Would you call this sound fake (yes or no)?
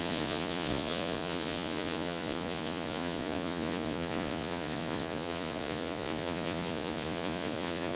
yes